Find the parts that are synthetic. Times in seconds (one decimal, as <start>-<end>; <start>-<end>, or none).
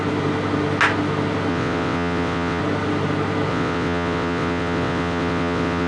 1.5-2.6; 3.5-5.9